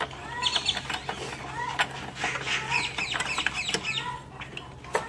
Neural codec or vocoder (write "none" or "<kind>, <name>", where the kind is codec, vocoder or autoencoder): none